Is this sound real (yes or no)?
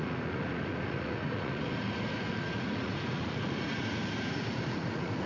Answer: no